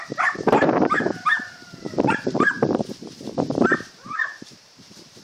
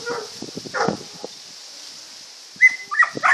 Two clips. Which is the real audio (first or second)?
second